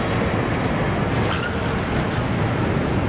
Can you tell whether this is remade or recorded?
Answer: recorded